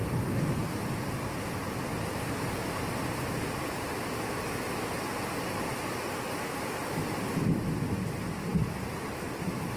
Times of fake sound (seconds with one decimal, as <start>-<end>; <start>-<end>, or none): none